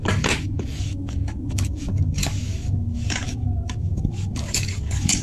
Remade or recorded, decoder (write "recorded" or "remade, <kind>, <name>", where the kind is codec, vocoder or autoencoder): remade, codec, DAC